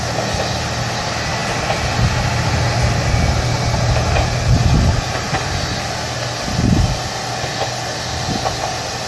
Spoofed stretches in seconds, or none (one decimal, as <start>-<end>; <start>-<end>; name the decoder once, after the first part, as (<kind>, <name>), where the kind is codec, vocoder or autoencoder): none